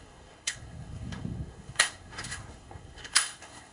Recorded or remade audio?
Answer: remade